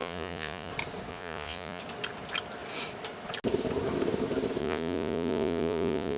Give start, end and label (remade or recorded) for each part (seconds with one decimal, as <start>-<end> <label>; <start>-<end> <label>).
0.0-0.7 remade; 0.7-1.1 recorded; 1.1-1.8 remade; 1.8-4.6 recorded; 4.6-6.2 remade